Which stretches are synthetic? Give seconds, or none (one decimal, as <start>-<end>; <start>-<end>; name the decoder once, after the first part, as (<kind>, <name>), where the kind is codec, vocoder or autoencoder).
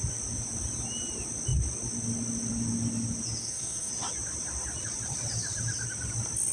3.4-3.9 (codec, SNAC)